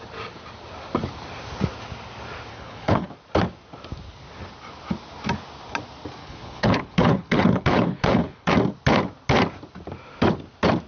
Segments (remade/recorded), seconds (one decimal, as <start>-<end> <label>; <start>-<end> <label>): 0.0-2.5 recorded; 2.5-3.1 remade; 3.1-6.2 recorded; 6.2-8.5 remade; 8.5-10.9 recorded